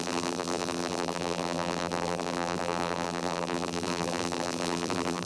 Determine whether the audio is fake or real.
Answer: fake